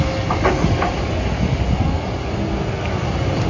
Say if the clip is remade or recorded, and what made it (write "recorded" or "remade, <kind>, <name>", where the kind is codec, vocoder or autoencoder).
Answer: recorded